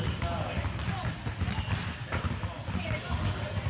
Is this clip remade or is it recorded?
recorded